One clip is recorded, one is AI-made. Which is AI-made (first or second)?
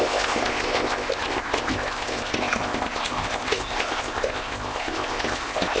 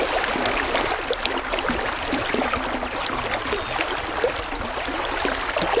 first